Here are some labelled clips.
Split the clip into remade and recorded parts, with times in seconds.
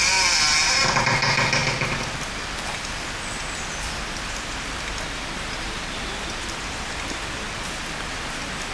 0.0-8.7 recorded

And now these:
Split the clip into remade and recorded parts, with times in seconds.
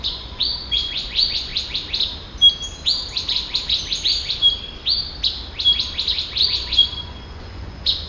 0.0-1.5 remade; 1.5-6.4 recorded; 6.4-8.1 remade